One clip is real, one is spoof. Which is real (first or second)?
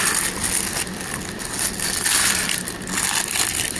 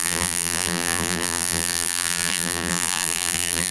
first